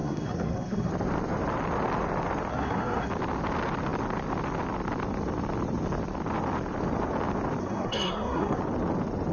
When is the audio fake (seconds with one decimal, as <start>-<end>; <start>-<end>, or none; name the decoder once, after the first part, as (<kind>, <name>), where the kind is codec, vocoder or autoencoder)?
0.0-0.9 (codec, SNAC); 2.5-3.1; 7.6-8.6